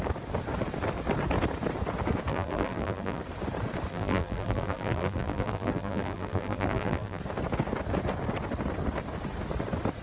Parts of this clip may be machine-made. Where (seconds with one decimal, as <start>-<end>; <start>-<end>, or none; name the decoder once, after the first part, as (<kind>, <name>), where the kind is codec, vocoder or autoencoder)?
2.3-3.2 (vocoder, BigVGAN v2); 3.9-7.2